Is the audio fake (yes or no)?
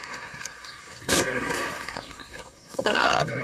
yes